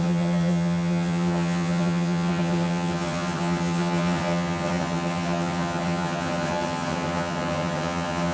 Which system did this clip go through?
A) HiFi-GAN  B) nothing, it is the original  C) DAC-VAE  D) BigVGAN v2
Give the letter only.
A